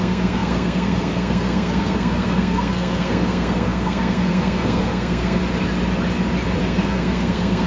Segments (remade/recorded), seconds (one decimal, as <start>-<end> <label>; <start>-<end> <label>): 0.0-5.4 remade; 5.4-6.6 recorded; 6.6-7.7 remade